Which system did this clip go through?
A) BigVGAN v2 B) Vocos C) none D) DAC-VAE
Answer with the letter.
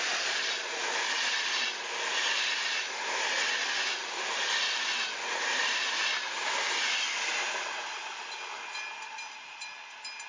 C